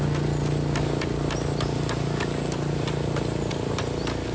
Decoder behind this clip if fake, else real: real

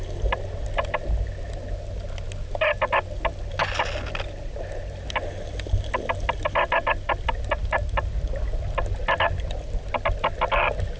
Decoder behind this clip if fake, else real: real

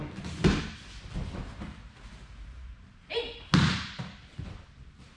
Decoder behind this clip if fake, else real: real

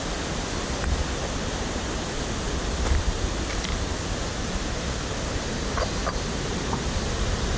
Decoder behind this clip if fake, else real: real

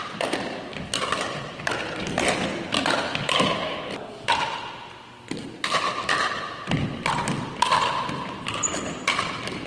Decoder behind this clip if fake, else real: real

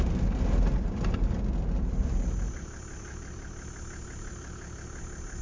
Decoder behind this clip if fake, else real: real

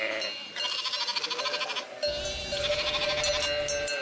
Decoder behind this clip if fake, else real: real